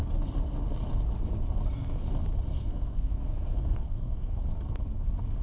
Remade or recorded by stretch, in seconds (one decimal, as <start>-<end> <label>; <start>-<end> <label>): 0.0-2.6 recorded; 2.6-4.4 remade; 4.4-5.4 recorded